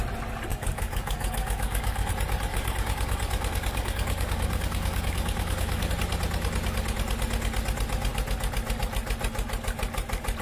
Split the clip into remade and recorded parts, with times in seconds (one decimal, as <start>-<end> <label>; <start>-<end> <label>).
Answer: 0.0-0.5 recorded; 0.5-2.1 remade; 2.1-2.5 recorded; 2.5-5.9 remade; 5.9-10.4 recorded